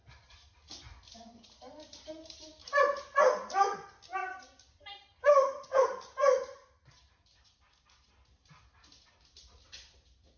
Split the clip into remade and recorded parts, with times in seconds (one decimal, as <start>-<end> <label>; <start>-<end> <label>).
0.0-10.4 recorded